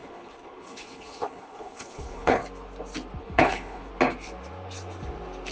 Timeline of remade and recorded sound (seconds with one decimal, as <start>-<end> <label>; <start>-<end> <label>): 0.0-2.4 remade; 2.4-3.2 recorded; 3.2-3.9 remade; 3.9-5.5 recorded

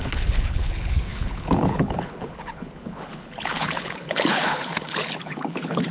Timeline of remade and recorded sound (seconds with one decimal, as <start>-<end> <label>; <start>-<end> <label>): 0.0-5.9 remade